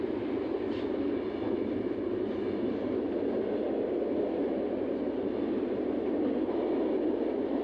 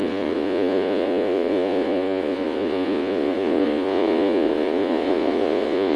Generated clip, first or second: second